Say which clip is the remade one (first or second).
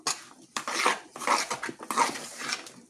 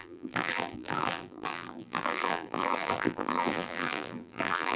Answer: second